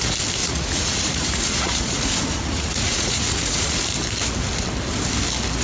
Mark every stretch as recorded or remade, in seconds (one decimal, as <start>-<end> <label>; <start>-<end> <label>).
0.0-0.4 recorded; 0.4-3.8 remade; 3.8-5.6 recorded